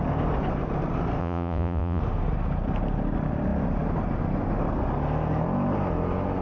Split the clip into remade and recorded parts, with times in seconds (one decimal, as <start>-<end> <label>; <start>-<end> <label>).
0.0-1.2 recorded; 1.2-2.0 remade; 2.0-6.4 recorded